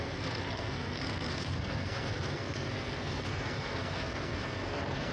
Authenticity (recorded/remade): remade